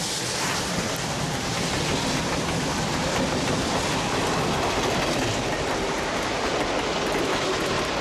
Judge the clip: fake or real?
real